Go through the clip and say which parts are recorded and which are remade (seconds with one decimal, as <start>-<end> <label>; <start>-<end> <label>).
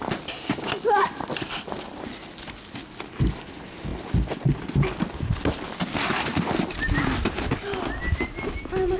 0.0-9.0 recorded